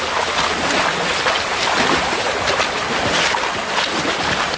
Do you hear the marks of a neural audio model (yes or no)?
no